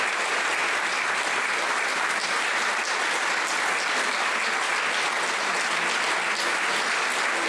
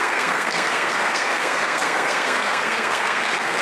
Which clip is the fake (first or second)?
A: second